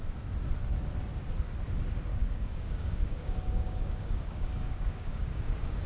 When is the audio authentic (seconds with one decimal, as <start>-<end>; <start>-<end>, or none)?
0.0-2.1